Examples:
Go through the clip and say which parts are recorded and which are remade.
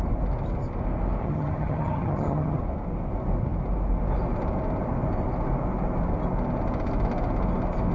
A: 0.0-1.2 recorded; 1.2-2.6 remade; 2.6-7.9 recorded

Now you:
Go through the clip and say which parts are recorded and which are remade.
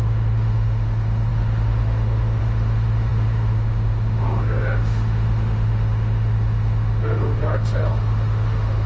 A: 0.0-8.9 remade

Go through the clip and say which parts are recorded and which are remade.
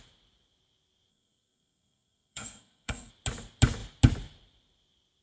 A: 0.0-1.1 recorded; 1.1-3.1 remade; 3.1-5.2 recorded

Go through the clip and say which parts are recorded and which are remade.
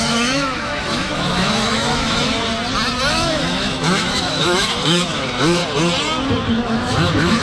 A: 0.0-2.5 remade; 2.5-3.1 recorded; 3.1-5.6 remade; 5.6-6.5 recorded; 6.5-7.4 remade